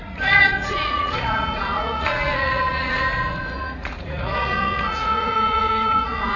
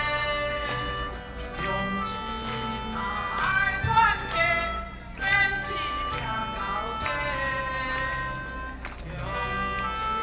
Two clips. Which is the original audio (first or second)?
second